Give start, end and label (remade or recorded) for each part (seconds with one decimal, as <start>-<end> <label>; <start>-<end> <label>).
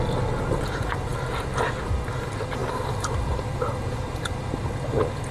0.0-2.6 recorded; 2.6-5.3 remade